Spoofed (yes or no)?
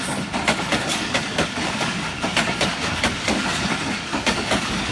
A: yes